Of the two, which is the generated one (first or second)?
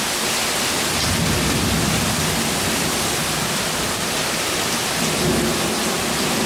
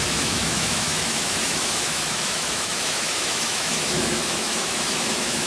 second